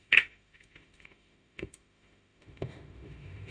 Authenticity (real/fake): fake